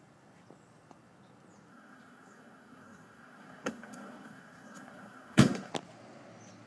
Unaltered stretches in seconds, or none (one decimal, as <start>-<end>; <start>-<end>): 0.0-1.7; 5.7-6.7